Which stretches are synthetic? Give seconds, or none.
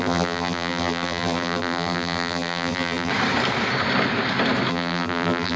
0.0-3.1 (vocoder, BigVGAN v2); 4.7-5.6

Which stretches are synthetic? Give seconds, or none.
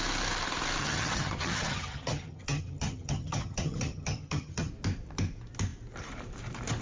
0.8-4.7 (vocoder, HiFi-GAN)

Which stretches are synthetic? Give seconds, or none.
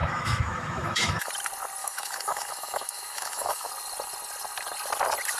0.0-1.3 (autoencoder, DAC-VAE); 1.8-3.7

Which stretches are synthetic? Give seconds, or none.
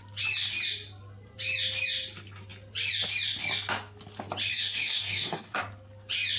4.5-5.6 (codec, DAC)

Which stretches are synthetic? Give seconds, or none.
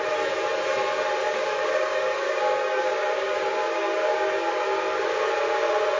1.2-4.8 (codec, DAC)